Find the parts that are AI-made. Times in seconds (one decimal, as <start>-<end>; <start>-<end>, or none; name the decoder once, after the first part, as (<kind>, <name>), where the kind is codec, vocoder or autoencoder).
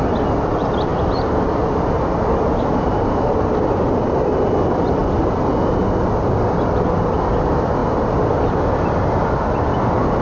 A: 0.9-3.6 (vocoder, BigVGAN v2)